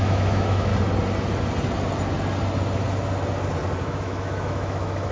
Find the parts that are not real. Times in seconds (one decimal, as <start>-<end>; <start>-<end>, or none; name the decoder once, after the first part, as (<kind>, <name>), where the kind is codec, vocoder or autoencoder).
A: 0.0-0.7 (autoencoder, DAC-VAE); 3.8-5.1